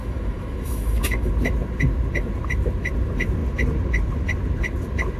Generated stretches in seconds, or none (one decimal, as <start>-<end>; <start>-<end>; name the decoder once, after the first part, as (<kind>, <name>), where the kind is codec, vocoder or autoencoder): 0.0-1.3 (autoencoder, DAC-VAE)